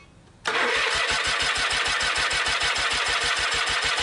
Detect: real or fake real